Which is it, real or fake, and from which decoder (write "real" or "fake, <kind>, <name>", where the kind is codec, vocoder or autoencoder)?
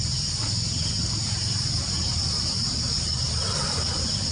fake, vocoder, BigVGAN v2